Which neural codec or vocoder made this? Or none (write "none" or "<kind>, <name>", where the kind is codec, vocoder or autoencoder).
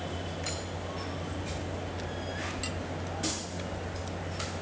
none